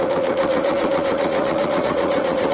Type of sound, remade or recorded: remade